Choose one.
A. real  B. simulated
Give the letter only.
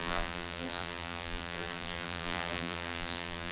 B